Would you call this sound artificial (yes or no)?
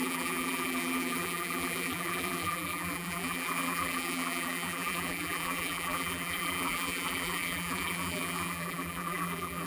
yes